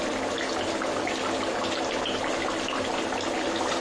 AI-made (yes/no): no